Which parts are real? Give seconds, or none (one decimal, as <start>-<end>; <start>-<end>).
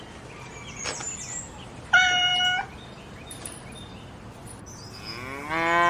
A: 0.0-5.9